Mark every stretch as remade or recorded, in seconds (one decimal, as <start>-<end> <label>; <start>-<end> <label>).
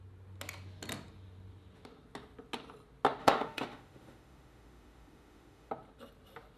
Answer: 0.0-3.2 recorded; 3.2-5.7 remade; 5.7-6.6 recorded